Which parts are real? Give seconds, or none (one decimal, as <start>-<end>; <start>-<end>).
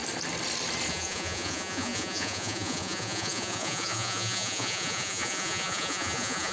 0.0-0.9